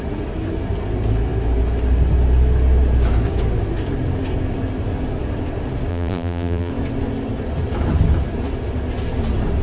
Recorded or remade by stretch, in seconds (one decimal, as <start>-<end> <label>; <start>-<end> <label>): 0.0-5.9 recorded; 5.9-6.7 remade; 6.7-9.6 recorded